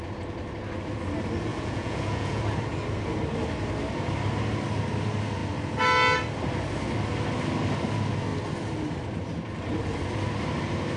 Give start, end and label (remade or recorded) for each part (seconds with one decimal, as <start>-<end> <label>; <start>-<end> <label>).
0.0-1.5 recorded; 1.5-2.4 remade; 2.4-11.0 recorded